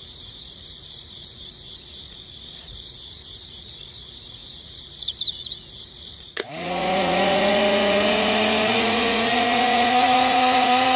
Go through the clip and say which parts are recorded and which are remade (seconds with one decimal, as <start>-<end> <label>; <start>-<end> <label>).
0.0-11.0 remade